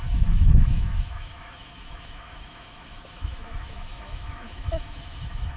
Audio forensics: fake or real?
fake